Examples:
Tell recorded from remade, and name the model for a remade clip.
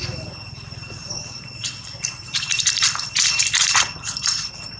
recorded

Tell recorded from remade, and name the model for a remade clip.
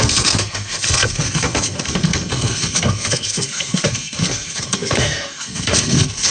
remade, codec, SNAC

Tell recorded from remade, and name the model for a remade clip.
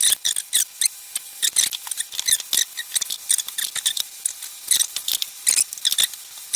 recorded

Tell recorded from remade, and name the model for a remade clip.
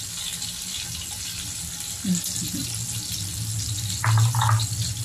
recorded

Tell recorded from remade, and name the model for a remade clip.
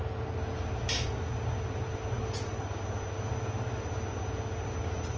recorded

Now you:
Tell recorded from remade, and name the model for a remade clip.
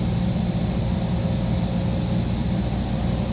recorded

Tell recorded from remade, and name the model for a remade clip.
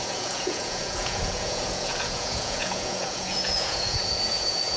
remade, vocoder, Vocos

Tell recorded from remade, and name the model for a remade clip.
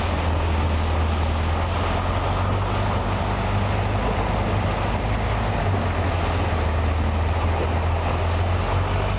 recorded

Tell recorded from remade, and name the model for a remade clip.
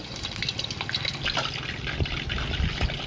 recorded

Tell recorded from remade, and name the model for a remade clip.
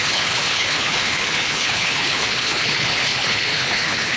remade, codec, HILCodec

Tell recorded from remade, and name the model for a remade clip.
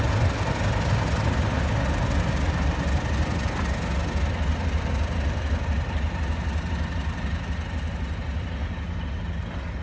recorded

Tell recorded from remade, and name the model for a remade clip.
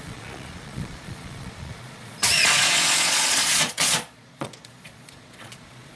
remade, vocoder, Vocos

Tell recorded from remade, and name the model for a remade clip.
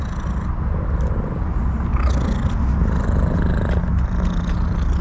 recorded